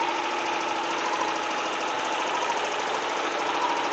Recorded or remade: recorded